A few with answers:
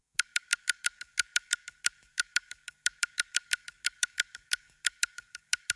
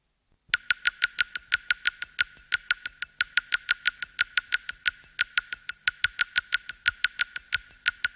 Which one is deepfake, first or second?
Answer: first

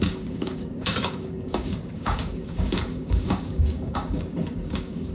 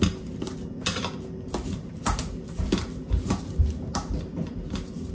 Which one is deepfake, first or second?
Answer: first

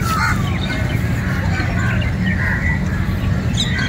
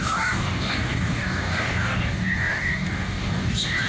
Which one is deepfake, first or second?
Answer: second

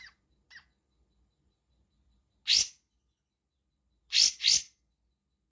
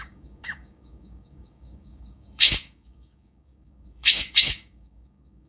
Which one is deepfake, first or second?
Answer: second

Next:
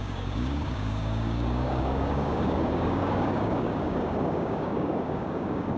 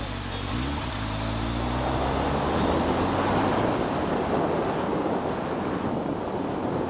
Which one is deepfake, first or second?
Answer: first